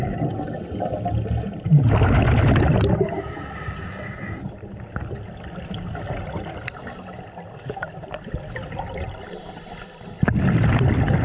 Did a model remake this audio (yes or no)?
no